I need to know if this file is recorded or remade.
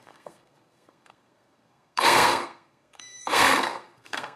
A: remade